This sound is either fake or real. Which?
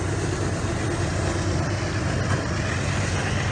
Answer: real